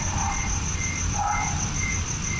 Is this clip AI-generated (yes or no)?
no